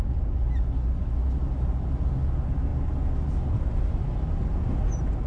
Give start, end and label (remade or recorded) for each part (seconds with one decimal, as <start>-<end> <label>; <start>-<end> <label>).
0.0-5.3 recorded